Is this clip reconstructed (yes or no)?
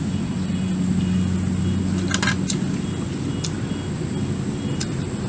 no